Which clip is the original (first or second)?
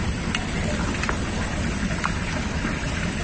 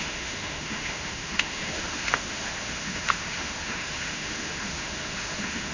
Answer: first